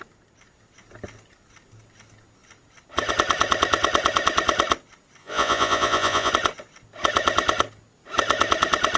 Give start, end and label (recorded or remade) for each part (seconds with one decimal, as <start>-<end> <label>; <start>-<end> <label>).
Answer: 0.0-5.2 recorded; 5.2-6.3 remade; 6.3-9.0 recorded